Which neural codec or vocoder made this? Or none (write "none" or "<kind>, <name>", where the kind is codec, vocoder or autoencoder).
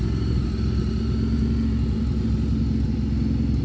none